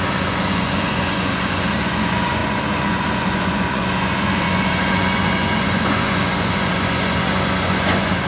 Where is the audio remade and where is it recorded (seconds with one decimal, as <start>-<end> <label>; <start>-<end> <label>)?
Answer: 0.0-8.3 remade